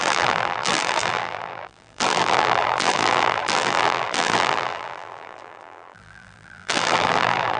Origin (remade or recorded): remade